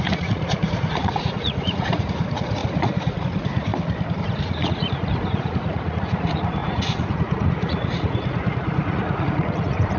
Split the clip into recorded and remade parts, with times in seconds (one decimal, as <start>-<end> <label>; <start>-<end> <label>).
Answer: 0.0-3.7 remade; 3.7-4.2 recorded; 4.2-10.0 remade